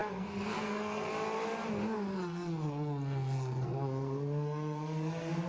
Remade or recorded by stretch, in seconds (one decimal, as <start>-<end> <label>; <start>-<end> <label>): 0.0-1.1 remade; 1.1-2.1 recorded; 2.1-5.5 remade